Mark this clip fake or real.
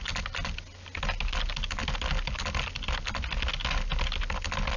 real